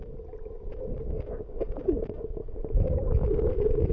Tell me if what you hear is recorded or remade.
remade